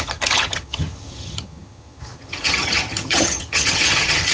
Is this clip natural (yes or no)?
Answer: no